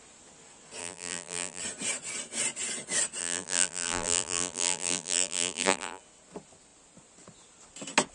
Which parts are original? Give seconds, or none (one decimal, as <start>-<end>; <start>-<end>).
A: 0.0-0.8; 1.6-3.2; 6.0-8.1